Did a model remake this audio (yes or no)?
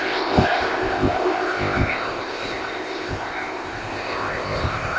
yes